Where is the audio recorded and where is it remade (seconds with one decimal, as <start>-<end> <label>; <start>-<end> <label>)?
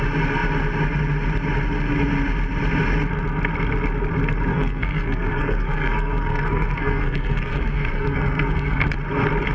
0.0-4.5 recorded; 4.5-8.9 remade; 8.9-9.5 recorded